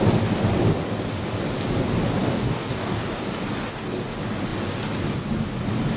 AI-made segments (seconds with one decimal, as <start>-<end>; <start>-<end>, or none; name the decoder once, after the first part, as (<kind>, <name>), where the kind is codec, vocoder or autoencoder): 2.2-3.4 (codec, DAC)